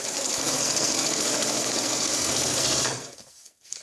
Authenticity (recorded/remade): remade